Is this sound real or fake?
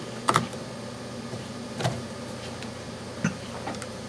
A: real